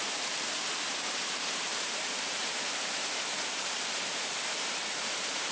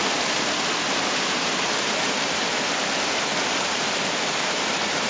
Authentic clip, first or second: second